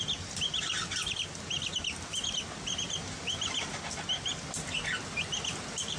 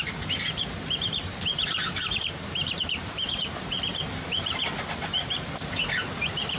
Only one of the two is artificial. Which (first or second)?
second